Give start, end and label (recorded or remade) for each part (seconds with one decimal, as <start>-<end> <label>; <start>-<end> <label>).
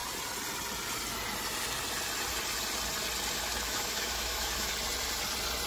0.0-3.4 recorded; 3.4-4.7 remade; 4.7-5.7 recorded